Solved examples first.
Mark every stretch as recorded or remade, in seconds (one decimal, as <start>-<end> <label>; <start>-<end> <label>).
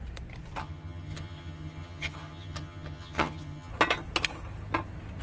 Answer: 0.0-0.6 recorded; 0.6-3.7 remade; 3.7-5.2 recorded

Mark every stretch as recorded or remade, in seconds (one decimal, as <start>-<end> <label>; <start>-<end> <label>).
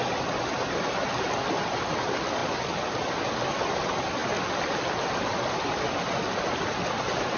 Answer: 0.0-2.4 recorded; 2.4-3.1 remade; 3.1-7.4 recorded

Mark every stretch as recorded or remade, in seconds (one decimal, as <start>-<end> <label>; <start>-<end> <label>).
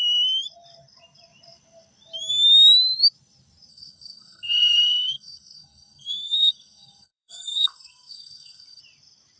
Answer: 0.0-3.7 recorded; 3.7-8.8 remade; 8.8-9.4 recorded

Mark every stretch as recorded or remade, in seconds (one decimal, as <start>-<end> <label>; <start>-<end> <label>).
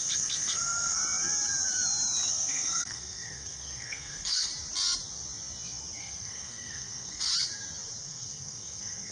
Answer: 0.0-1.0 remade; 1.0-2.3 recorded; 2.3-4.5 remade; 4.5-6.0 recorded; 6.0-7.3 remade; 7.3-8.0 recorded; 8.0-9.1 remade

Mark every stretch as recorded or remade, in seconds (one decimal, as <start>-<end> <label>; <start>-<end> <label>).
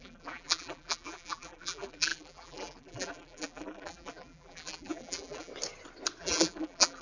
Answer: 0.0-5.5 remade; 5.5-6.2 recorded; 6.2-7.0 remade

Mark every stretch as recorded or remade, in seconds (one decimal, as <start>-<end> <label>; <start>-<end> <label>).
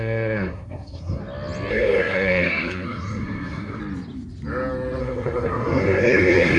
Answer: 0.0-1.2 remade; 1.2-1.7 recorded; 1.7-3.8 remade; 3.8-5.0 recorded; 5.0-6.6 remade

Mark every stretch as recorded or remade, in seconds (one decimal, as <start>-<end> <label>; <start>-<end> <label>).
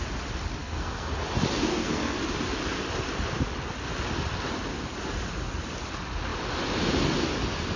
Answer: 0.0-0.6 recorded; 0.6-1.1 remade; 1.1-1.7 recorded; 1.7-2.2 remade; 2.2-7.8 recorded